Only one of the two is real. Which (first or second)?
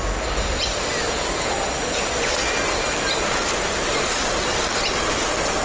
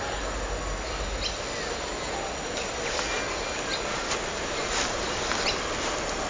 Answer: second